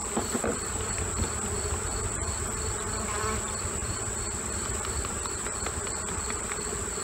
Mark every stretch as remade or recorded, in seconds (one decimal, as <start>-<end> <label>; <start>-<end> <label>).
0.0-0.8 remade; 0.8-3.8 recorded; 3.8-5.8 remade; 5.8-7.0 recorded